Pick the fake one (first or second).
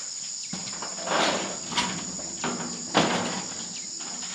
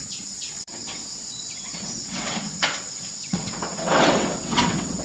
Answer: second